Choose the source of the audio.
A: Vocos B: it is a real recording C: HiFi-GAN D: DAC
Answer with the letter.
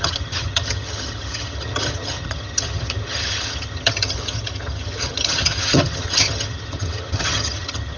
C